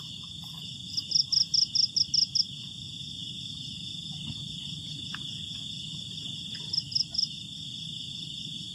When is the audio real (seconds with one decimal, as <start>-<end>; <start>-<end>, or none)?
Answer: 0.0-8.7